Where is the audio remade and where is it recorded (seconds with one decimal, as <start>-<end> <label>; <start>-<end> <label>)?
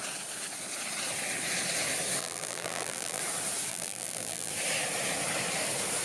0.0-2.2 recorded; 2.2-3.2 remade; 3.2-3.7 recorded; 3.7-4.5 remade; 4.5-6.0 recorded